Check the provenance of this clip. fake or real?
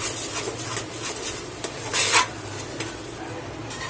real